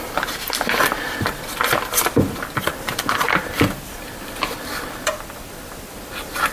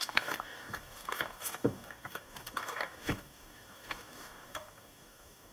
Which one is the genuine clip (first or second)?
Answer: first